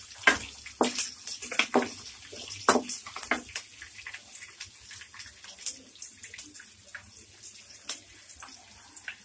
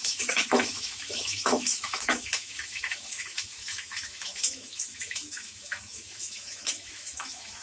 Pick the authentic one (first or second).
first